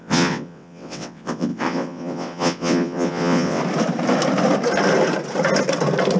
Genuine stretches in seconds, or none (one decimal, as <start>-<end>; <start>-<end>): 3.6-6.2